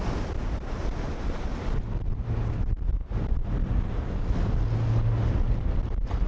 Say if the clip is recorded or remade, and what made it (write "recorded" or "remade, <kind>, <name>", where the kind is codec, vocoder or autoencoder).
recorded